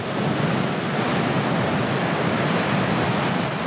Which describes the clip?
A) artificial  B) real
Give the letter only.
B